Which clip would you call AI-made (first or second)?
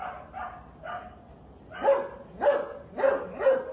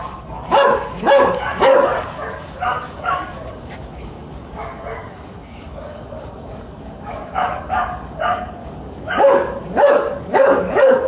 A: second